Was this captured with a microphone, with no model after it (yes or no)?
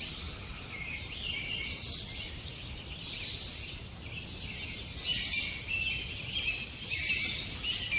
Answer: yes